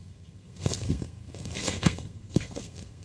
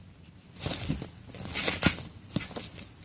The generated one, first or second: first